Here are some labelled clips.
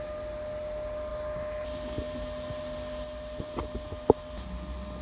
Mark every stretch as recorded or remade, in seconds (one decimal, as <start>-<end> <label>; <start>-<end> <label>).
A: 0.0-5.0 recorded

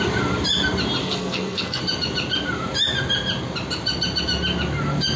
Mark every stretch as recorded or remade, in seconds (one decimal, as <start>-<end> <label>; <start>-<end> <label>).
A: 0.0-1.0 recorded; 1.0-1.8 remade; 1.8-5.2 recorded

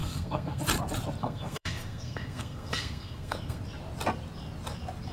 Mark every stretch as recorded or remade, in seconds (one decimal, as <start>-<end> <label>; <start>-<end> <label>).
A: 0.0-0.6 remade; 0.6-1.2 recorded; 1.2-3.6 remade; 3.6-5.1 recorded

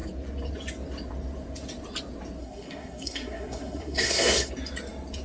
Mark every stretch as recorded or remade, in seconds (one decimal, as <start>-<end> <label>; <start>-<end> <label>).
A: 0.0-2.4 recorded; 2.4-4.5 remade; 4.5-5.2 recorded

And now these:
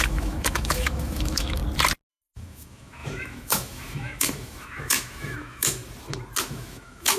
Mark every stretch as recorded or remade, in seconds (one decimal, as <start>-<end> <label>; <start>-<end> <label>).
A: 0.0-1.6 remade; 1.6-2.1 recorded; 2.1-5.8 remade; 5.8-6.4 recorded; 6.4-7.2 remade